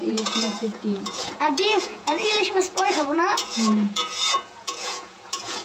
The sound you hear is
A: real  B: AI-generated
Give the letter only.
B